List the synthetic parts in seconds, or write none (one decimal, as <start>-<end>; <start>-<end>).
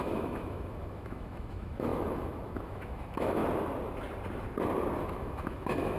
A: 0.0-3.4; 5.0-6.0